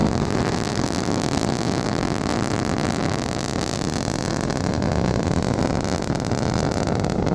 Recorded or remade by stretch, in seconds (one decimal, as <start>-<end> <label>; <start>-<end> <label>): 0.0-2.3 remade; 2.3-5.6 recorded; 5.6-7.3 remade